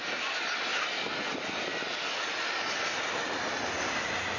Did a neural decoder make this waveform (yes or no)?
no